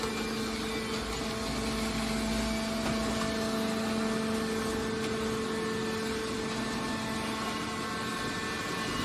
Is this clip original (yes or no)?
yes